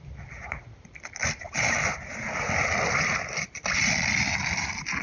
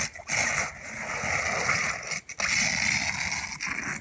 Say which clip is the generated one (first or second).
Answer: first